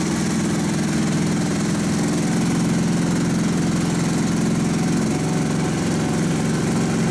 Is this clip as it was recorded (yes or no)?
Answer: yes